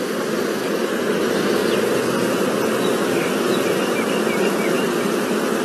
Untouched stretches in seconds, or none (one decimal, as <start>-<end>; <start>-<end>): 0.0-5.6